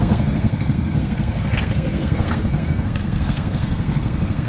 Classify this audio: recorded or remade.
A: remade